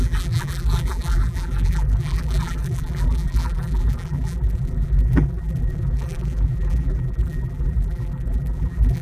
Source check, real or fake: fake